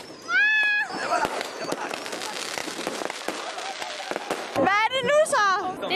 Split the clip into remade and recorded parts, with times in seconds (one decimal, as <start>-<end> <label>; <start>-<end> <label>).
0.0-2.6 recorded; 2.6-3.2 remade; 3.2-6.0 recorded